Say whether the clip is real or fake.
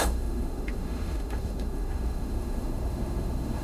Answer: fake